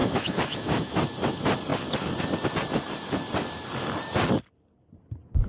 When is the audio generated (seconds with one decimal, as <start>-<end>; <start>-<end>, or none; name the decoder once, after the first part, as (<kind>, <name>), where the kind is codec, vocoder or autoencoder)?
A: 0.0-1.0 (autoencoder, DAC-VAE)